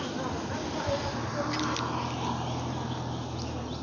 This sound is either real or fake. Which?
real